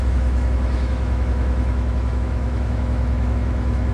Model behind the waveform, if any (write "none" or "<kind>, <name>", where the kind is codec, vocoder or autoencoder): autoencoder, DAC-VAE